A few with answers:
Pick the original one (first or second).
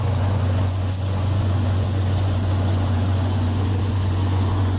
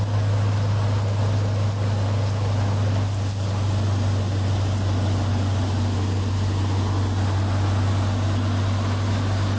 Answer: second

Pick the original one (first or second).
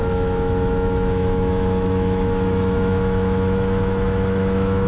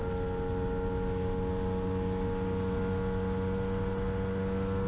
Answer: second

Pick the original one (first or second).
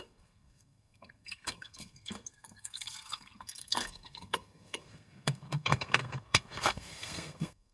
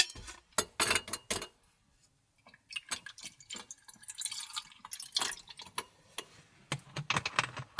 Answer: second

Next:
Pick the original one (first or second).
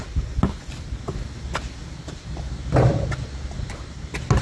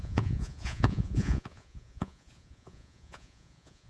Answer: first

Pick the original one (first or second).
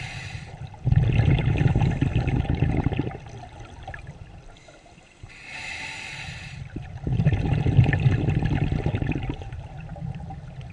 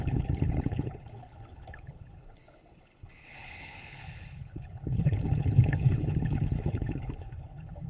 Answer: first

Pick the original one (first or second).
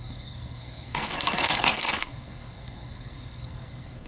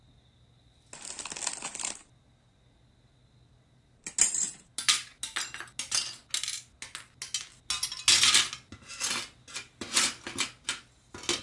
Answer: second